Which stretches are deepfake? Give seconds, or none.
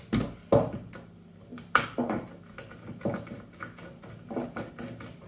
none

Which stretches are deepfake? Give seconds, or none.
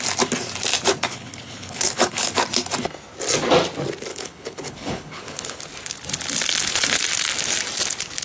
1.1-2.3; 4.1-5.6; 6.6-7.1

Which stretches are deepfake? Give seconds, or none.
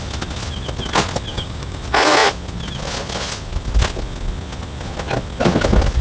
1.3-1.8